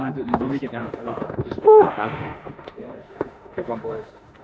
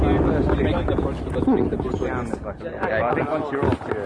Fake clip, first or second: first